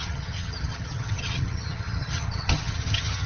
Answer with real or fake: fake